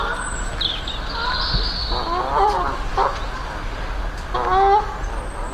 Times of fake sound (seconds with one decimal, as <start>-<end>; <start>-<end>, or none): none